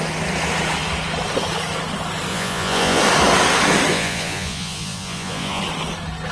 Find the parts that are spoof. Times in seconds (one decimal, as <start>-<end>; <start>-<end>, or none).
2.3-3.0; 3.9-5.6